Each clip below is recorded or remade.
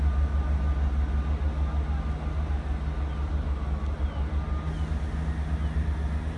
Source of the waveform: recorded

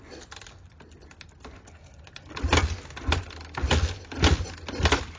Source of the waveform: recorded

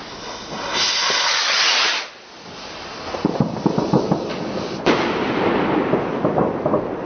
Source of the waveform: recorded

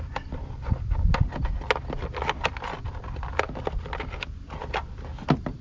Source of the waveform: recorded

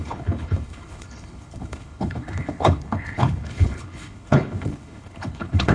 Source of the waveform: remade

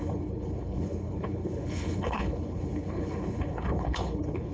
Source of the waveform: remade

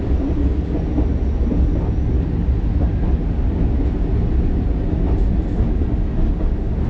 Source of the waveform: recorded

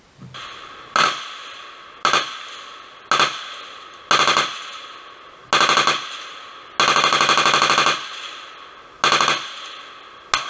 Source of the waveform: recorded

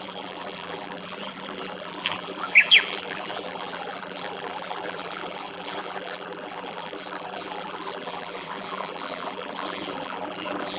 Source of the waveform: remade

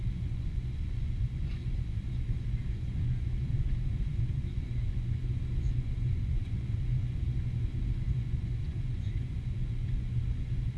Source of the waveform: remade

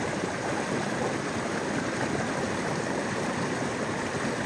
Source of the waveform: remade